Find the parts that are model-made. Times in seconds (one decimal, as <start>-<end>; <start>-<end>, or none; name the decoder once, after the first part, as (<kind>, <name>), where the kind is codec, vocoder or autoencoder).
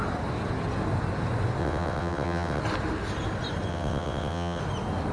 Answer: 1.6-2.6 (vocoder, WaveNeXt); 3.7-4.6